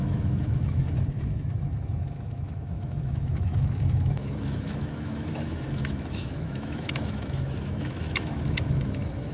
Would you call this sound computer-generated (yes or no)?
yes